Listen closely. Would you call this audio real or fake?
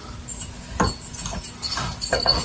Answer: real